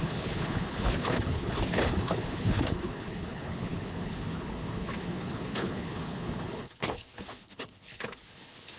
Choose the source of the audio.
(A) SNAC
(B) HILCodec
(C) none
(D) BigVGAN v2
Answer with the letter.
B